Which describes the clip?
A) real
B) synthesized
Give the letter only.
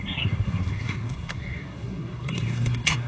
B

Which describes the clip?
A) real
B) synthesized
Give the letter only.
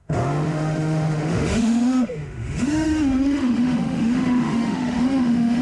B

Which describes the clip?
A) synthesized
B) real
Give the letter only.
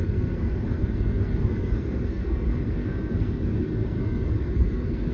A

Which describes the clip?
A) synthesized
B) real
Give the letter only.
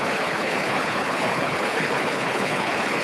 A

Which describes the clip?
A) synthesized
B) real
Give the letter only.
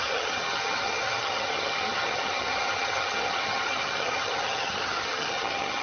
A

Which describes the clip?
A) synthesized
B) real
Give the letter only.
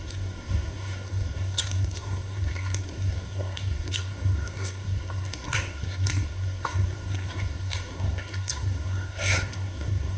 A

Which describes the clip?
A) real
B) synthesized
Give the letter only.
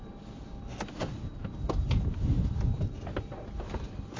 A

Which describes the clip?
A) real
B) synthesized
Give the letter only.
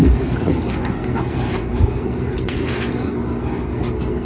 B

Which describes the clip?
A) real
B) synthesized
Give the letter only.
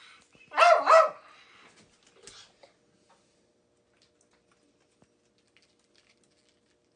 A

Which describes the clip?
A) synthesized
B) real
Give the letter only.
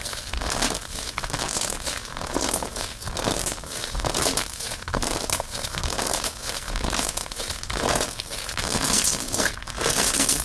A